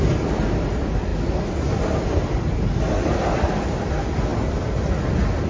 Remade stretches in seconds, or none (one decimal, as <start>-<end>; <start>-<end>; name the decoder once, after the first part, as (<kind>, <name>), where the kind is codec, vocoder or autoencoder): none